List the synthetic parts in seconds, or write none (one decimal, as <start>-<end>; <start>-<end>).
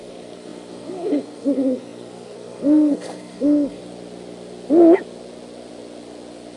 0.0-3.8